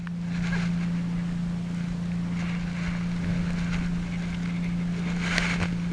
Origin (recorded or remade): recorded